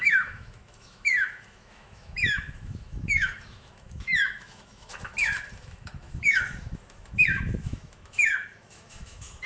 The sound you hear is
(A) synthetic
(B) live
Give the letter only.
A